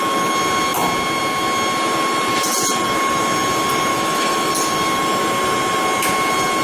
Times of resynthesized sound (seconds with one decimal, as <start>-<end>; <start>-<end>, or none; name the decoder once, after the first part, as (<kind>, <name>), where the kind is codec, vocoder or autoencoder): 3.9-4.5 (autoencoder, DAC-VAE)